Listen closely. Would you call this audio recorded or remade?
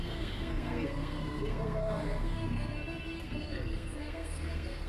remade